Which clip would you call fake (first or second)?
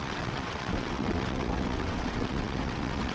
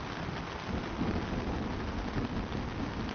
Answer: first